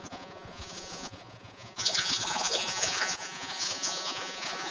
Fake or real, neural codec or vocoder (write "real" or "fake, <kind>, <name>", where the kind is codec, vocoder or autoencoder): fake, vocoder, Vocos